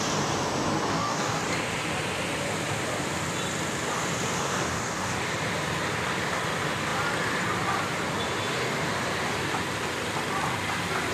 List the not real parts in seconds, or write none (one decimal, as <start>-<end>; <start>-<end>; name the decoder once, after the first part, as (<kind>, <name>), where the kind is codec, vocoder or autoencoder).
0.9-1.4 (codec, DAC); 4.4-5.2